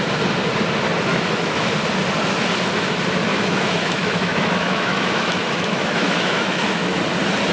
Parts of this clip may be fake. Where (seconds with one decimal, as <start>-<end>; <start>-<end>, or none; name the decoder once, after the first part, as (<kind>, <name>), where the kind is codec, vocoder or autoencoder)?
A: 1.1-1.7 (autoencoder, DAC-VAE); 3.3-7.0